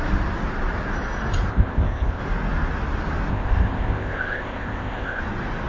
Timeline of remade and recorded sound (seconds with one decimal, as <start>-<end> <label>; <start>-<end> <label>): 0.0-1.5 recorded; 1.5-2.2 remade; 2.2-3.3 recorded; 3.3-5.2 remade; 5.2-5.7 recorded